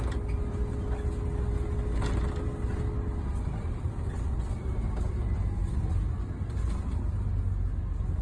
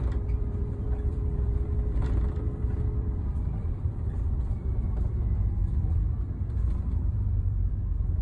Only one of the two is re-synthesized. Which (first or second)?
second